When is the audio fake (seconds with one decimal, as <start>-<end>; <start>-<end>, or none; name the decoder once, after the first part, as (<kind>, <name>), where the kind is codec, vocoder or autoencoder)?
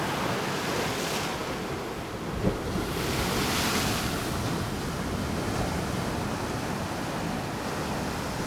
none